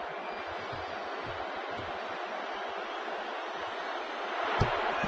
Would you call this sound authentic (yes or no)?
yes